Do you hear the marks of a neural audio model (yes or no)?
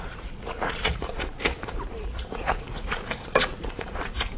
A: yes